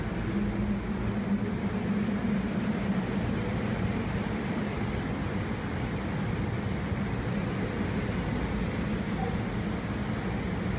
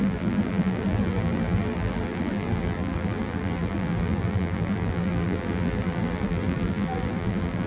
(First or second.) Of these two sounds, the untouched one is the first